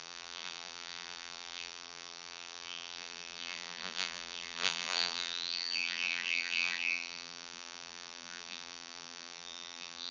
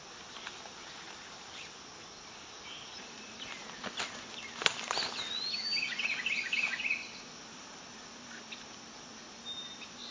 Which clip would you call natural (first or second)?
second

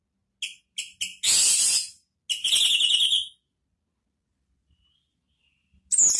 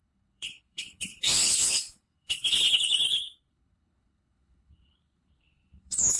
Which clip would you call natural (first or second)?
first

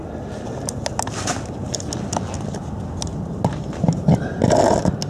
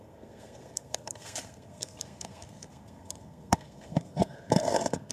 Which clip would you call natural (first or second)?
first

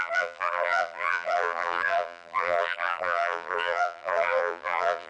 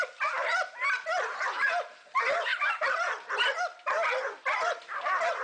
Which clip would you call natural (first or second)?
second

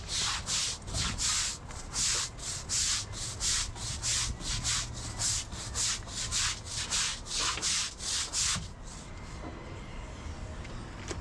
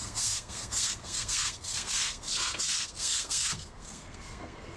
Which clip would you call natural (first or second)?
first